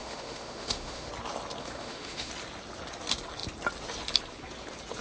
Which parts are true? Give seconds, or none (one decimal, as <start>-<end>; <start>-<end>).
1.1-1.6; 2.3-5.0